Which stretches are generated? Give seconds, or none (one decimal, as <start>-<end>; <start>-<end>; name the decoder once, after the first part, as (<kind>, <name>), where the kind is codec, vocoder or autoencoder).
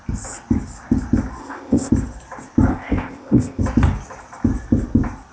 1.4-1.9 (codec, ZipCodec); 2.7-3.6